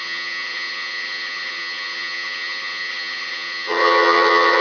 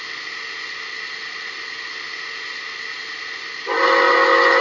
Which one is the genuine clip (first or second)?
second